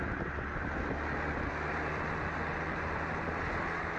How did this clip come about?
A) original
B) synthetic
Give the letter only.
A